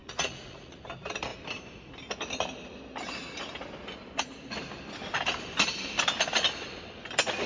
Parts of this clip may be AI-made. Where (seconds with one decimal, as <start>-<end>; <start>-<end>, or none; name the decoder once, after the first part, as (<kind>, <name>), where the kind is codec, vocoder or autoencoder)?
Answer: 0.0-0.8 (vocoder, Vocos)